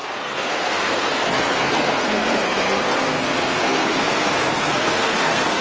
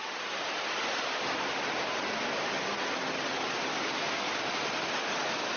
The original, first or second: second